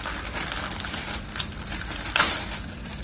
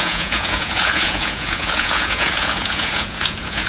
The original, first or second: first